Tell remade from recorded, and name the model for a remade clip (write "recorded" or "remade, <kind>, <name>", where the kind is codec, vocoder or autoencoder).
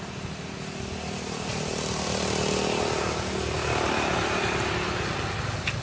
recorded